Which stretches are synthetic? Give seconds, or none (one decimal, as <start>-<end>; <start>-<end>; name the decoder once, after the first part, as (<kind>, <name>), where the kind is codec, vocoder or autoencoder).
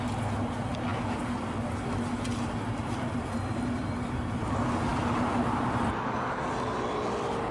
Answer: none